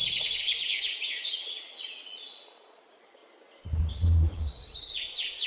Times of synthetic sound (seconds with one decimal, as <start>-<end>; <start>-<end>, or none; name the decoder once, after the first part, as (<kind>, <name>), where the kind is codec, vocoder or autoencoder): 0.0-3.2 (vocoder, Vocos); 3.9-5.5